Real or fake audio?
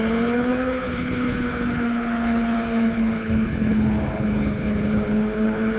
fake